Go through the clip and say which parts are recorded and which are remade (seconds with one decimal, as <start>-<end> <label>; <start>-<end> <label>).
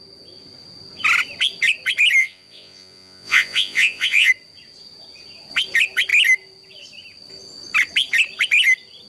0.0-2.2 recorded; 2.2-4.3 remade; 4.3-9.1 recorded